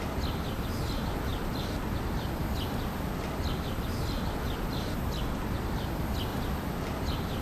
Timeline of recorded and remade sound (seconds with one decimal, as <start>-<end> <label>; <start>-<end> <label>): 0.0-1.3 recorded; 1.3-4.4 remade; 4.4-6.3 recorded; 6.3-7.4 remade